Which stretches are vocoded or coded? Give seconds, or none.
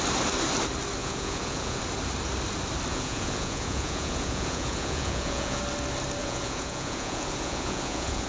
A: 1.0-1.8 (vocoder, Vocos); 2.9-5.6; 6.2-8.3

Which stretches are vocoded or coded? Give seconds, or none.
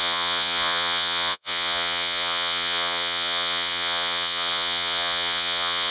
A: 0.0-5.9 (vocoder, Vocos)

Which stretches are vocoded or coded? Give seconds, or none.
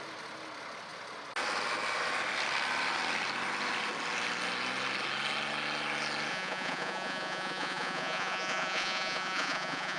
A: 6.3-10.0 (vocoder, Vocos)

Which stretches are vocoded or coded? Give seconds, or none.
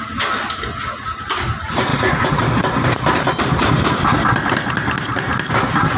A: 1.9-2.4 (vocoder, Vocos)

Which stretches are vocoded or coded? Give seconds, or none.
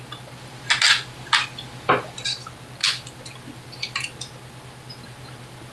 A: none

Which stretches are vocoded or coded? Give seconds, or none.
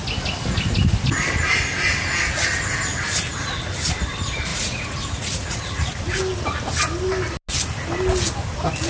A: 4.5-6.2 (vocoder, Vocos)